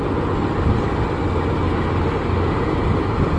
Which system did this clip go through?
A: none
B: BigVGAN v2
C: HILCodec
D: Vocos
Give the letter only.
A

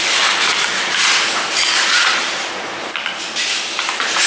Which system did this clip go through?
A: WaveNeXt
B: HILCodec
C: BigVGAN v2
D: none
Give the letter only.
D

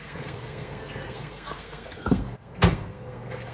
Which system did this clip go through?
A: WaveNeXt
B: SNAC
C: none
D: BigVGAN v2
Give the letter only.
B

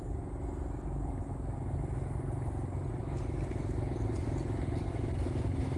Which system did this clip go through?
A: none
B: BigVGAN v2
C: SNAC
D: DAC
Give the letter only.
A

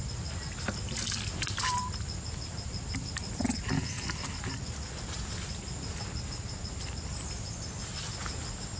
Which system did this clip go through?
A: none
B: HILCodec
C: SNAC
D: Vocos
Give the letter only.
A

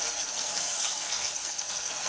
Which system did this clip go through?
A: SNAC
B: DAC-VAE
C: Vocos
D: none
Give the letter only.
A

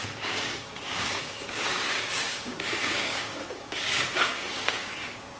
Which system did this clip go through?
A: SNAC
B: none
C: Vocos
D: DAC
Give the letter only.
D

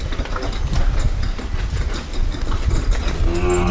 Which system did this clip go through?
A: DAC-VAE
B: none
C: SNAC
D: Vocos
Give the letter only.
B